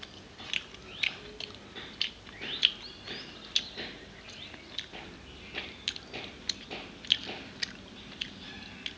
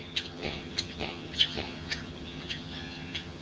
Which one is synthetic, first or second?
second